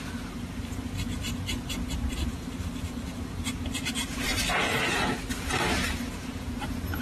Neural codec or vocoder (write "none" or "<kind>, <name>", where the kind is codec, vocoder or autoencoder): vocoder, BigVGAN v2